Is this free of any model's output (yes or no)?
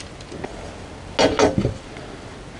yes